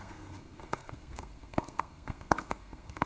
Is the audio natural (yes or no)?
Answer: no